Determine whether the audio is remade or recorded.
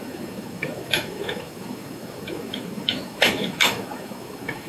remade